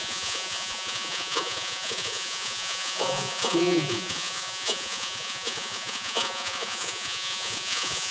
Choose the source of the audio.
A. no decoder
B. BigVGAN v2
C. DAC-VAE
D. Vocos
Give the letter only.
D